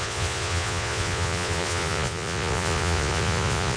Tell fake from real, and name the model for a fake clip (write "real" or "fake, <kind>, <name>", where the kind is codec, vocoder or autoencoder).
fake, vocoder, Vocos